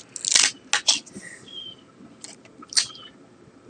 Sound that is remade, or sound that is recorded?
recorded